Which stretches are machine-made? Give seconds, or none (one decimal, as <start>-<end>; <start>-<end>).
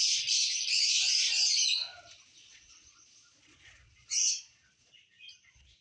2.3-5.8